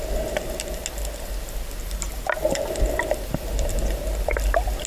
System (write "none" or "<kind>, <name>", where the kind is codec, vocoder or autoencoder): none